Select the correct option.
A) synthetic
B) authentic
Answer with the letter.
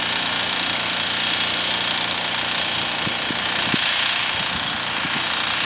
B